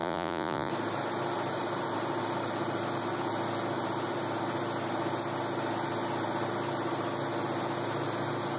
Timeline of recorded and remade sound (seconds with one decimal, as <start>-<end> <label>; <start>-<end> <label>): 0.0-0.7 remade; 0.7-8.6 recorded